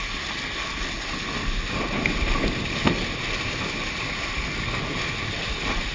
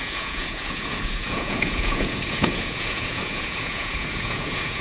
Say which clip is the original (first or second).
first